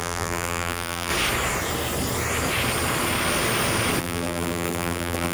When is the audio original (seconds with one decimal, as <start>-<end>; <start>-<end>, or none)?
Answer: 1.1-4.0